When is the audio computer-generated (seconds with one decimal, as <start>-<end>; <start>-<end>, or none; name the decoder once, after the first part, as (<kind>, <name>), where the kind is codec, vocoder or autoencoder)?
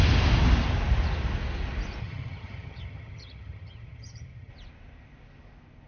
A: 2.0-4.5 (vocoder, HiFi-GAN)